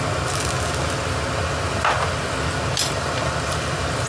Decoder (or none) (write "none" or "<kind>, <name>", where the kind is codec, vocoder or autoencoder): none